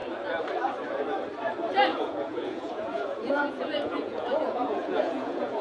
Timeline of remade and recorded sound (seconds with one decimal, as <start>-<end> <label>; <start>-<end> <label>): 0.0-1.9 recorded; 1.9-5.6 remade